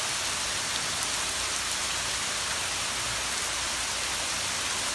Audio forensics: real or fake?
real